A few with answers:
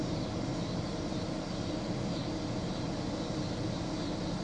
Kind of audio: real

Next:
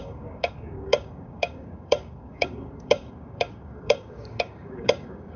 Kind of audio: fake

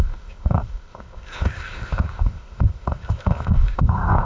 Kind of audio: fake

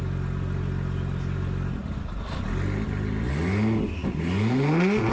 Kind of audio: real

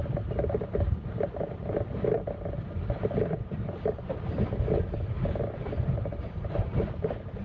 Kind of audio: real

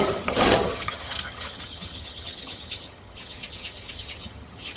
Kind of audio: fake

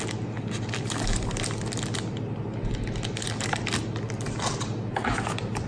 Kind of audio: real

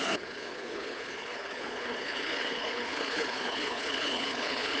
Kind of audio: fake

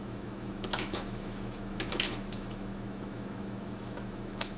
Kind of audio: fake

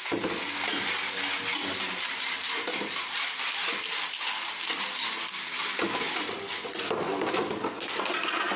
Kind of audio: real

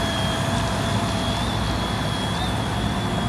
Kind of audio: real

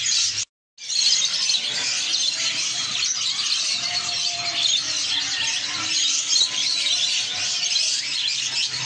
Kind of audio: real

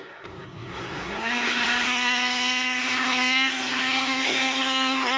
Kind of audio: fake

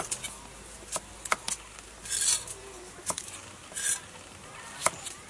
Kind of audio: real